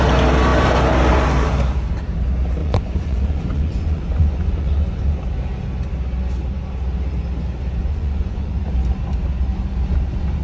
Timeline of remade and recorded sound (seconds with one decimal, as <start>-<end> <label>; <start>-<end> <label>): 0.0-2.6 recorded; 2.6-5.2 remade; 5.2-7.8 recorded; 7.8-8.6 remade; 8.6-10.4 recorded